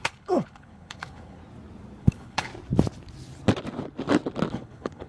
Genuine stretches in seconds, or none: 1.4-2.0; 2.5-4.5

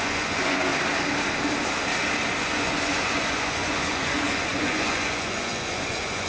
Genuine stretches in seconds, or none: 0.7-2.4

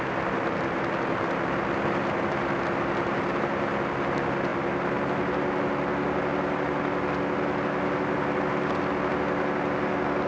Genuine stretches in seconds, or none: 0.0-10.3

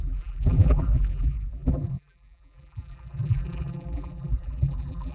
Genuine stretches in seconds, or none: none

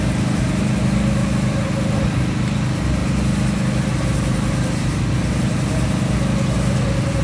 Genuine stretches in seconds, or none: 0.0-7.2

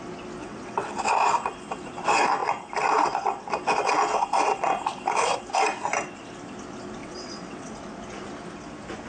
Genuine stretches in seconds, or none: 0.0-0.4; 0.9-7.0; 7.7-9.1